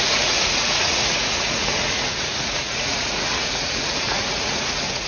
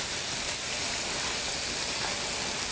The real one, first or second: second